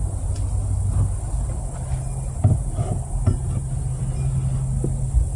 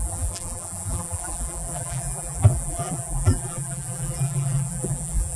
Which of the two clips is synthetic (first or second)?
second